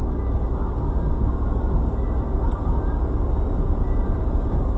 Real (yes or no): yes